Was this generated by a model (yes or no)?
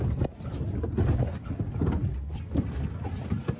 no